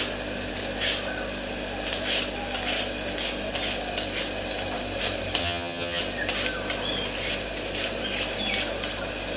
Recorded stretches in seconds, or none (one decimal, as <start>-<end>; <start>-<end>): 0.0-5.4; 6.0-9.4